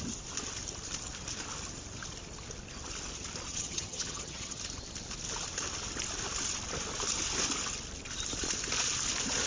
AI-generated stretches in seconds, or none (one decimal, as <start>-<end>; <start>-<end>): 3.5-4.6